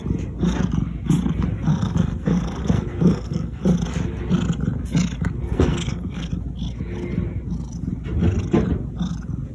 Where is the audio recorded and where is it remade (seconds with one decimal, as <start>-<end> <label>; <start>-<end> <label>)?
0.0-1.7 recorded; 1.7-3.6 remade; 3.6-5.4 recorded; 5.4-6.3 remade; 6.3-9.5 recorded